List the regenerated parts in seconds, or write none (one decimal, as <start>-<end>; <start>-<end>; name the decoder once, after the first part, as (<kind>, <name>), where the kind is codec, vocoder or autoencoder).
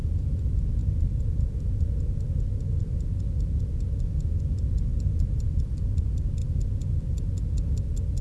none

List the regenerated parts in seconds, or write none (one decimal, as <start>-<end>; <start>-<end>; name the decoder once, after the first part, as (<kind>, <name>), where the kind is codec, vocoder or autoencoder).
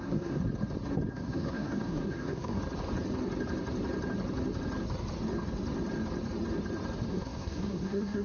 0.0-0.4 (codec, SNAC); 1.1-2.6; 7.1-8.2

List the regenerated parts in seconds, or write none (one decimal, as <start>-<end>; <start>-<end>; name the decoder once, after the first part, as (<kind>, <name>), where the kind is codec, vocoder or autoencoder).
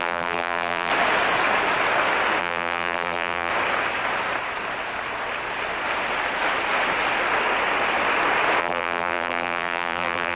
0.0-0.9 (vocoder, BigVGAN v2); 2.4-3.5; 8.6-10.4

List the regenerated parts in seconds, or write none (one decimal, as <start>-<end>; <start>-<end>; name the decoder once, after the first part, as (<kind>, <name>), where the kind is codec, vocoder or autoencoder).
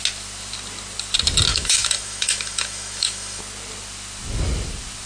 1.5-3.4 (autoencoder, DAC-VAE)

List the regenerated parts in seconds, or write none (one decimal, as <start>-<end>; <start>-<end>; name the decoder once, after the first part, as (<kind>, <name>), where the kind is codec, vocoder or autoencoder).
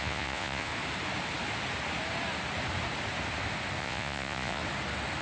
0.0-0.7 (vocoder, Vocos); 3.8-4.6